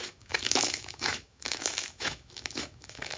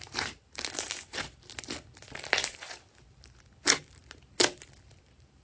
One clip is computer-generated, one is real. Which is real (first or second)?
second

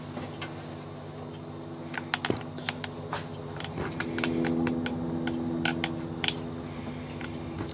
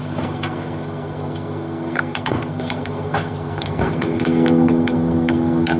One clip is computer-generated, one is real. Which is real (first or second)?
first